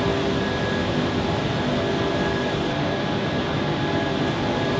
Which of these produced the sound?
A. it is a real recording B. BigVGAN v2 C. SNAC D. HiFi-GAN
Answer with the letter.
A